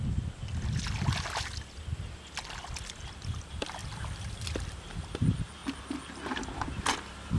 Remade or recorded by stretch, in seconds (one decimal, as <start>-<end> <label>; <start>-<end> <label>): 0.0-7.4 recorded